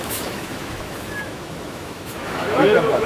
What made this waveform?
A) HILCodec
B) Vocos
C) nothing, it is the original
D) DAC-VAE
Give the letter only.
D